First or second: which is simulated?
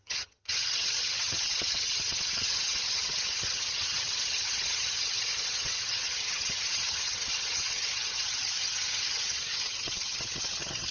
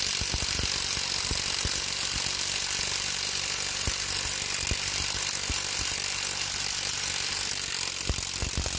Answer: first